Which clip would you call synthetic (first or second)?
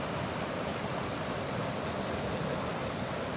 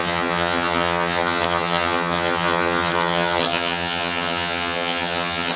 second